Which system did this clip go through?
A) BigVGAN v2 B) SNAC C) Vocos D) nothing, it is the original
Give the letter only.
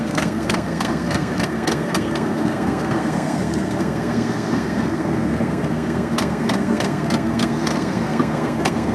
B